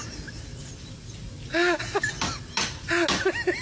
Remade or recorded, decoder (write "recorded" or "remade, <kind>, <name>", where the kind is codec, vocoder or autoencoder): recorded